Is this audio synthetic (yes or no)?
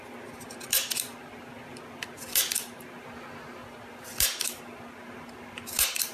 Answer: no